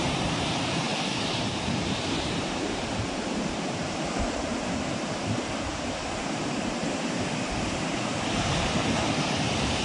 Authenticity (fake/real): fake